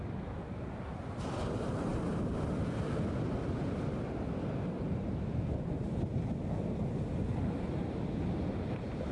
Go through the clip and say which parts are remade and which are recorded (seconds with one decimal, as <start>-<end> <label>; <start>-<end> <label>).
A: 0.0-9.1 recorded